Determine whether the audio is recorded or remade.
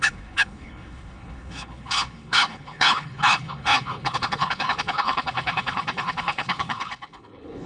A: remade